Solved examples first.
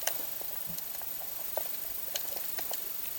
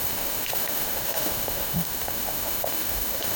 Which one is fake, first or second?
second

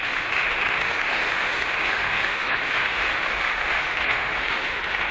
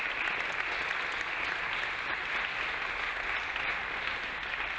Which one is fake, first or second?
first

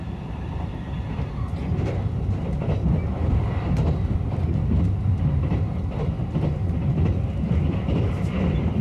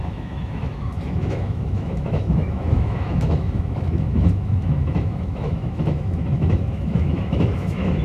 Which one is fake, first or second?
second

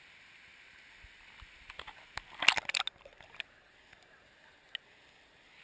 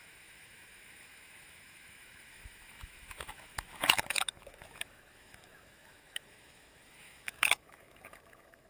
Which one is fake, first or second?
second